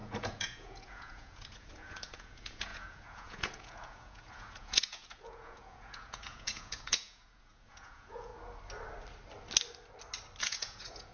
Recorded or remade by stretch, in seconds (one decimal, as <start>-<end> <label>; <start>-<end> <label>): 0.0-8.3 remade; 8.3-10.4 recorded; 10.4-11.1 remade